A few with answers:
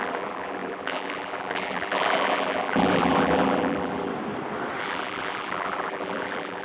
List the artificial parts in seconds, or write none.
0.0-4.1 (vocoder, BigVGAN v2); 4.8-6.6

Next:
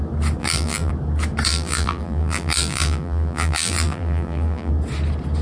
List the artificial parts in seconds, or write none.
0.4-0.9 (vocoder, BigVGAN v2); 1.5-4.7

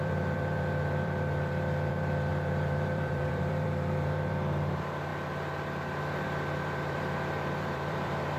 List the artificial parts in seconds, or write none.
0.0-5.1 (vocoder, BigVGAN v2); 6.2-8.4

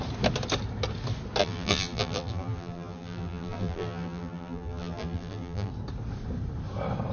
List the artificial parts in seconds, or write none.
1.4-5.7 (vocoder, BigVGAN v2)